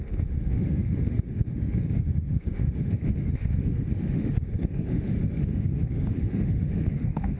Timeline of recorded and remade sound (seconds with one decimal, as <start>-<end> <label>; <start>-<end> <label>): 0.0-7.4 remade